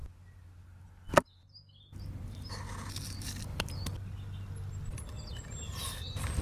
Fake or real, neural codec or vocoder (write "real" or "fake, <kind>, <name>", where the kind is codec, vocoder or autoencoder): real